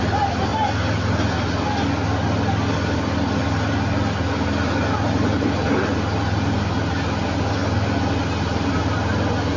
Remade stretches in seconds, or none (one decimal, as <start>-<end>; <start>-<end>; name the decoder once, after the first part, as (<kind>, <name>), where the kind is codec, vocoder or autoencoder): none